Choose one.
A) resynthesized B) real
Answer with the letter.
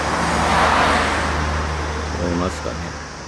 B